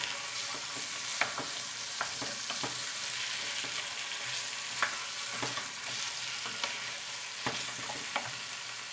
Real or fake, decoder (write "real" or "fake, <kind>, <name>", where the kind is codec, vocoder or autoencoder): real